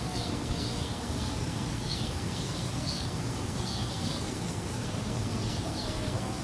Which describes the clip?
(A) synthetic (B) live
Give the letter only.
A